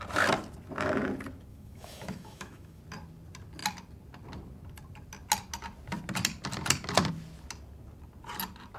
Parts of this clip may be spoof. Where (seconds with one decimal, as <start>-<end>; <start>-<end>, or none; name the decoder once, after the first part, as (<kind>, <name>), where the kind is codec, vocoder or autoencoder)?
1.5-2.8 (autoencoder, DAC-VAE)